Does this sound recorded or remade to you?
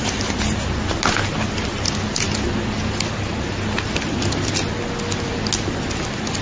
recorded